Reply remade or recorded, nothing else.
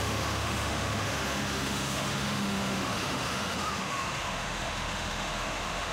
remade